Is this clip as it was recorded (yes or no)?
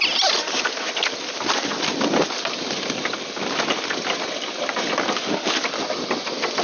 yes